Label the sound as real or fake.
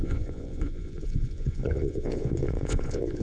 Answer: fake